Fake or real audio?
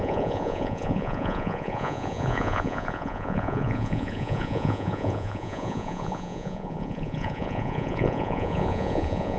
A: fake